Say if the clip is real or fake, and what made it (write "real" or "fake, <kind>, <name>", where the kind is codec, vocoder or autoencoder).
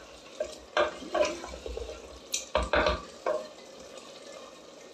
real